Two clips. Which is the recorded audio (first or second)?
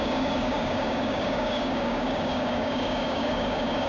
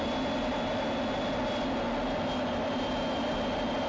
second